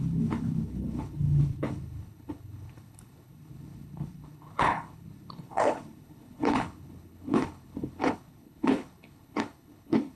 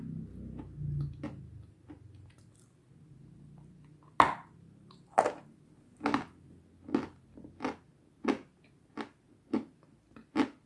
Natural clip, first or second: second